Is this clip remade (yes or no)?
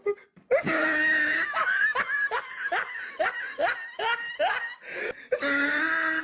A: no